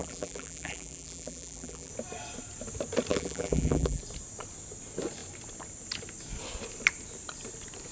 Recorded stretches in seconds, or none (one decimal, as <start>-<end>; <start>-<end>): 1.9-3.1; 4.0-7.9

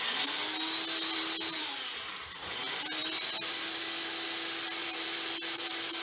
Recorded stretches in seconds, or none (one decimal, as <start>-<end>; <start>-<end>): 0.0-1.6; 2.5-3.0; 3.8-4.8

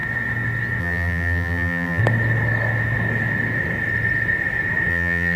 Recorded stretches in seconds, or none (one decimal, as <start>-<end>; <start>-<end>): 0.0-0.8; 2.0-4.9

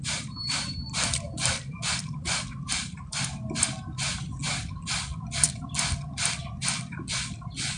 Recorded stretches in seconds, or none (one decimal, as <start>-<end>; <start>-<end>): 3.6-7.8

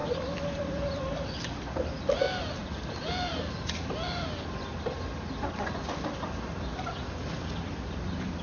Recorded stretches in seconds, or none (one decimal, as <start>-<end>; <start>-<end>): 1.0-2.6; 3.3-8.4

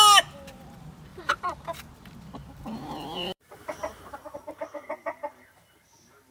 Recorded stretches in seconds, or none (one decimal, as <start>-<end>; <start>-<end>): 0.0-1.1; 1.9-2.4; 5.8-6.3

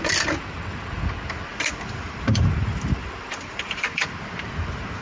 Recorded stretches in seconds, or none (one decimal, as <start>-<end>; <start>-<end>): 0.0-1.5; 4.5-5.0